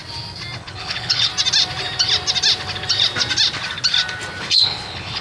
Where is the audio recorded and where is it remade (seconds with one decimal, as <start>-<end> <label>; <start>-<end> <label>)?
0.0-0.6 recorded; 0.6-1.3 remade; 1.3-4.4 recorded; 4.4-5.2 remade